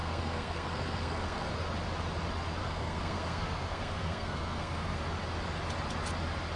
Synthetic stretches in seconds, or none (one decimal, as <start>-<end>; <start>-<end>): 0.0-1.5; 2.6-5.0